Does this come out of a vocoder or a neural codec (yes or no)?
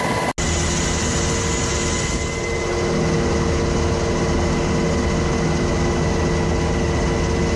no